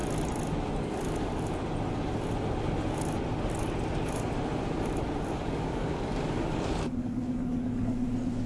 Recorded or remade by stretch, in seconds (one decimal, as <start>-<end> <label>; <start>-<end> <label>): 0.0-0.8 recorded; 0.8-1.3 remade; 1.3-5.3 recorded; 5.3-8.5 remade